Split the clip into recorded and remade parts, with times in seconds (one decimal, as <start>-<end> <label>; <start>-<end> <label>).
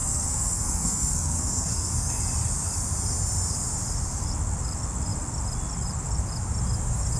0.0-2.2 remade; 2.2-7.2 recorded